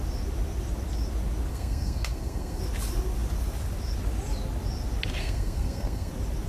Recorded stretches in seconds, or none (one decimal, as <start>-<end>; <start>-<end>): 0.0-1.5; 2.6-5.2; 6.1-6.5